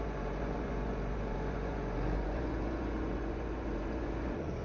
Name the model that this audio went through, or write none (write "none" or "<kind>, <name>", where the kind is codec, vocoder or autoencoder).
vocoder, Vocos